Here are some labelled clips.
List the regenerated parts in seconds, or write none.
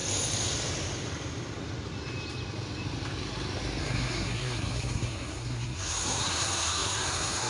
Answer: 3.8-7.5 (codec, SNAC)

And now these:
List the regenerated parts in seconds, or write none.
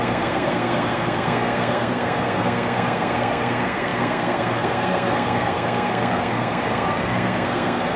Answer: 0.0-8.0 (codec, SNAC)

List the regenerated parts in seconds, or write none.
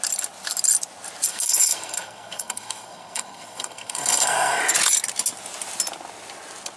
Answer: 1.3-4.6 (codec, SNAC)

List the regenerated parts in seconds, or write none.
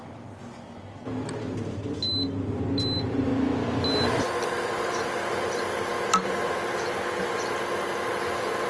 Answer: none